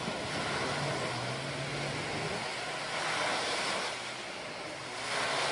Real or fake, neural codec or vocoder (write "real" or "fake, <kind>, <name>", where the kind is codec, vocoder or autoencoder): real